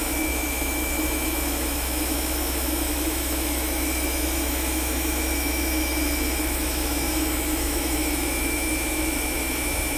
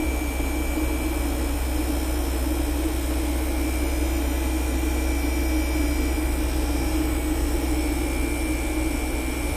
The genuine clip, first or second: second